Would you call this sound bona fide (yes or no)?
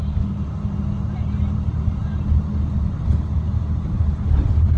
yes